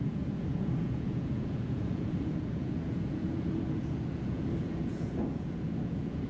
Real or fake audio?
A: fake